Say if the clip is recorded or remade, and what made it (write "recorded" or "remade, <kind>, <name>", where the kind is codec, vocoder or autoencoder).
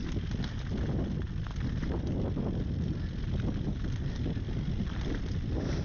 recorded